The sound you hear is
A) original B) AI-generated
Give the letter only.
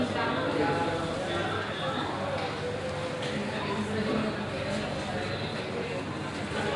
A